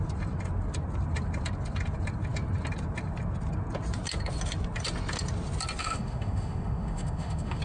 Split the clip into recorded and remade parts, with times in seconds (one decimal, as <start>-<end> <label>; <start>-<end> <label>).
0.0-5.8 recorded; 5.8-7.6 remade